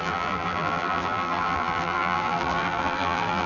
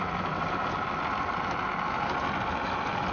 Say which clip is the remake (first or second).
first